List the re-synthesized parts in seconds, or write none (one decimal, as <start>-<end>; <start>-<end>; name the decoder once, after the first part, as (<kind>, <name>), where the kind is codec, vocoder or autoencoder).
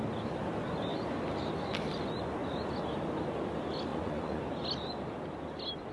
3.9-4.4 (vocoder, Vocos)